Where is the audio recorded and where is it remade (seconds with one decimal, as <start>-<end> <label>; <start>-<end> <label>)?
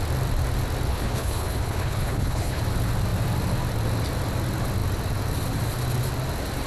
0.0-0.9 recorded; 0.9-2.6 remade; 2.6-6.7 recorded